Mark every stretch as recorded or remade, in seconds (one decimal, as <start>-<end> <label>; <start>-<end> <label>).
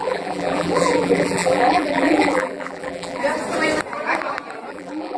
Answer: 0.0-3.2 remade; 3.2-4.7 recorded; 4.7-5.2 remade